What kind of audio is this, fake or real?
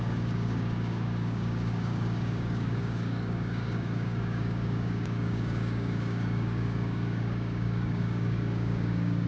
fake